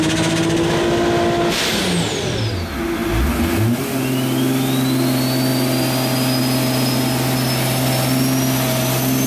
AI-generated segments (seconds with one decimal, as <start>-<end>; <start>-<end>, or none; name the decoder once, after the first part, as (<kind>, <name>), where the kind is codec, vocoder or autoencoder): none